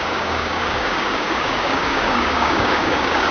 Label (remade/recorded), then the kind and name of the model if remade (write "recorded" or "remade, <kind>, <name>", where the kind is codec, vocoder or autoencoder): remade, codec, DAC